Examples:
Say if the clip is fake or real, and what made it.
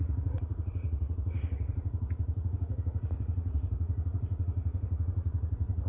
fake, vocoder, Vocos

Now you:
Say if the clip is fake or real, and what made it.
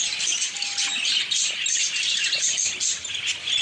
real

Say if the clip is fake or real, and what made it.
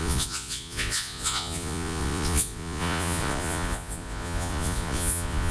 fake, vocoder, Vocos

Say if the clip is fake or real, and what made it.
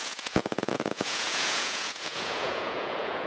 fake, vocoder, Vocos